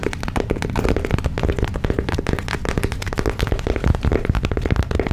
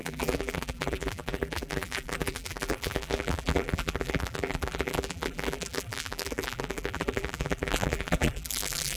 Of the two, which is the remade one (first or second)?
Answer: second